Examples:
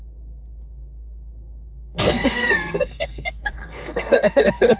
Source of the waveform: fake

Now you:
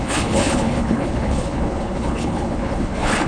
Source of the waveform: fake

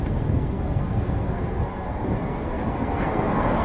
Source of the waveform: fake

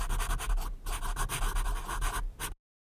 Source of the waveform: real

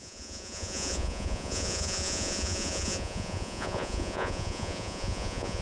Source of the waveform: fake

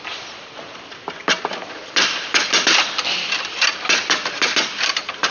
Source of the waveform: real